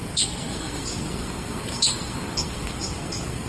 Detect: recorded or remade remade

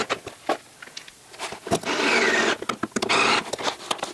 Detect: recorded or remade recorded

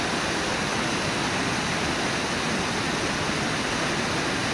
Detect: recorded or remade recorded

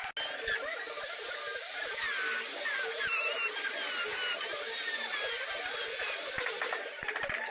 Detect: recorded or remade recorded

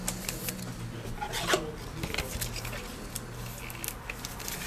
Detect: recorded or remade recorded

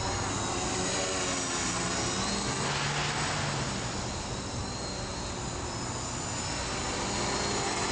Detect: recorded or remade recorded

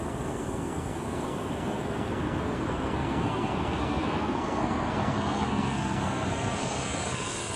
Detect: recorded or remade remade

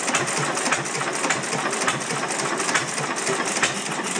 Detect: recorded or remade recorded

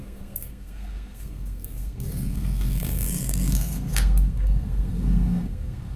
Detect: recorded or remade remade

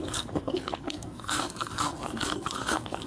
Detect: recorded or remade remade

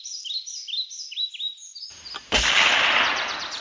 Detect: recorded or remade recorded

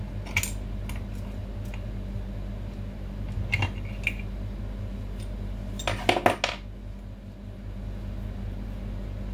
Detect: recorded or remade recorded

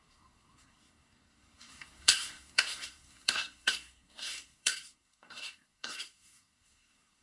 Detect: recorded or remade remade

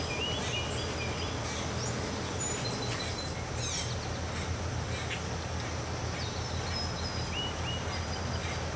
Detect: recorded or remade recorded